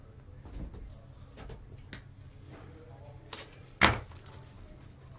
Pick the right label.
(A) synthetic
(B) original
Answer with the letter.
B